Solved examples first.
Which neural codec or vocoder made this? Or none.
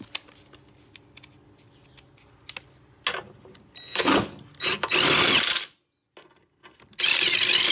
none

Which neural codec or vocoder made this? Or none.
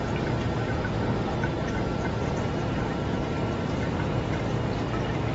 none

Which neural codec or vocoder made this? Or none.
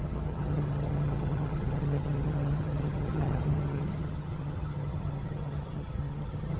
vocoder, HiFi-GAN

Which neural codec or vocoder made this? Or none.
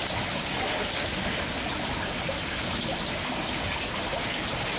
none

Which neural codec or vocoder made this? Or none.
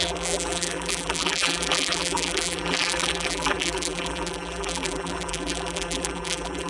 vocoder, BigVGAN v2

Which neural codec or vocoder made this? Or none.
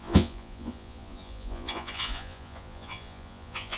vocoder, Vocos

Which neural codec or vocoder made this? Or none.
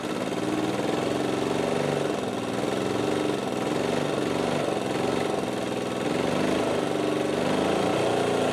none